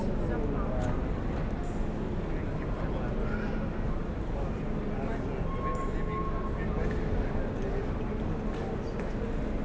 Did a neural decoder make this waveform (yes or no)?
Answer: no